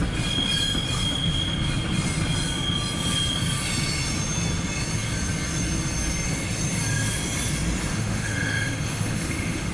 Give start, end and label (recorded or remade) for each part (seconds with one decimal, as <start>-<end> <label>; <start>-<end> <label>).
0.0-7.9 recorded; 7.9-9.7 remade